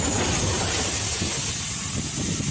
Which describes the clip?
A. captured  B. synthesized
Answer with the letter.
A